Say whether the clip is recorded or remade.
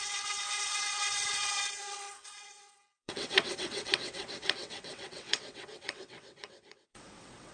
remade